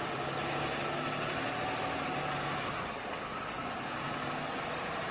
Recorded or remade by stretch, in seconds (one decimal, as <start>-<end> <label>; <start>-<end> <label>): 0.0-5.1 recorded